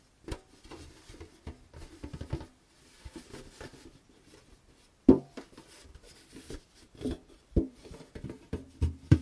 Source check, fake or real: real